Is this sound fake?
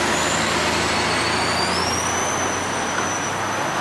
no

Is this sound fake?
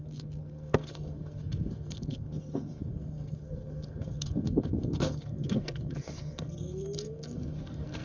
yes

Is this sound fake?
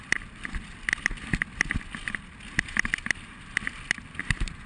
no